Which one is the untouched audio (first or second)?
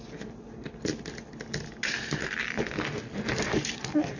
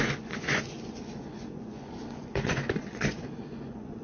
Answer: first